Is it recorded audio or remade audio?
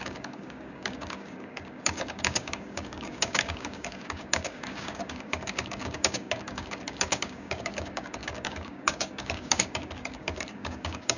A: remade